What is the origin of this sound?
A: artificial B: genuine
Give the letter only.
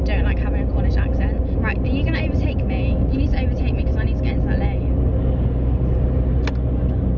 B